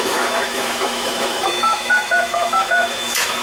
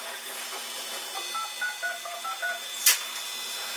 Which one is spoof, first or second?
first